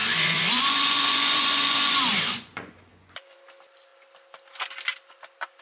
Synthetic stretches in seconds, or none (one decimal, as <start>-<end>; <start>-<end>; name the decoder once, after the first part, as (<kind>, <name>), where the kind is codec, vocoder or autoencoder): 0.0-3.4 (vocoder, Vocos)